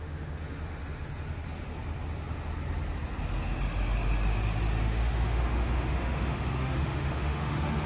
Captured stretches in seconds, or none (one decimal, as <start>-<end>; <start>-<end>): 0.8-4.8